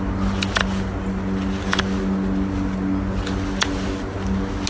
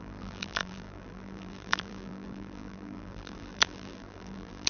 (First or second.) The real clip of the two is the first